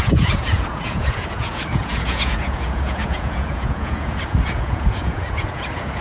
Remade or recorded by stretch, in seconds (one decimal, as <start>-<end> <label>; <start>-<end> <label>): 0.0-6.0 remade